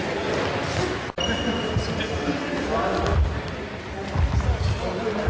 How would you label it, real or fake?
real